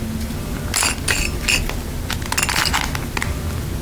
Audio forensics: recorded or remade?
recorded